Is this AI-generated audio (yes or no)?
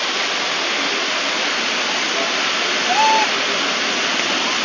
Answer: no